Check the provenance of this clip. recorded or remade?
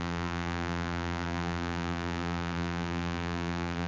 remade